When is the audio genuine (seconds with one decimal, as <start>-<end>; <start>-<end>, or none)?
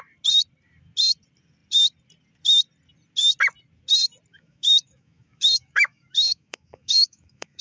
0.0-4.3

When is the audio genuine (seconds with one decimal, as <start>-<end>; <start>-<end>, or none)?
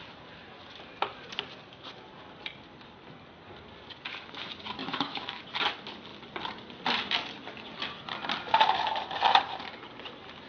0.0-4.8; 5.4-10.5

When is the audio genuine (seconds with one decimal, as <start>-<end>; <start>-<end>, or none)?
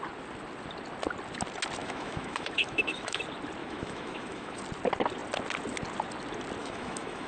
0.0-1.8; 3.2-3.6; 4.6-6.6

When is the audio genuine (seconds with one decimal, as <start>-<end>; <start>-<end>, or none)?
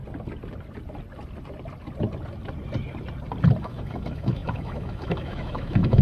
0.0-3.6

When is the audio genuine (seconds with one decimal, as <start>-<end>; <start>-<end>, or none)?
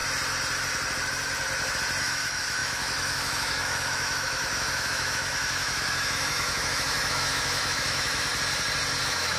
0.0-2.0; 8.3-9.0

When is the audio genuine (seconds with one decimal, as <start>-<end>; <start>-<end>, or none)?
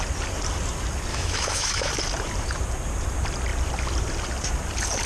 0.0-1.1; 1.9-5.1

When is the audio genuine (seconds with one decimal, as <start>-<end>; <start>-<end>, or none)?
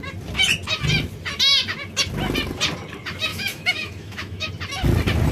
0.0-3.3; 4.5-5.3